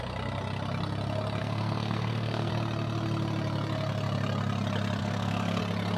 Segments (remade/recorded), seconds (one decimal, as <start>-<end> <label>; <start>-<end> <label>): 0.0-1.4 recorded; 1.4-2.5 remade; 2.5-5.0 recorded; 5.0-5.6 remade; 5.6-6.0 recorded